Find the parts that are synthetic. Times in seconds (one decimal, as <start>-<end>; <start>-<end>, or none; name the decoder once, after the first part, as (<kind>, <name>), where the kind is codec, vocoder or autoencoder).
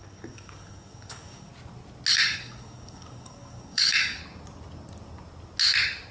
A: 0.0-1.5 (codec, DAC); 2.1-4.2